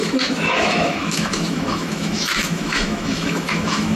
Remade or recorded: remade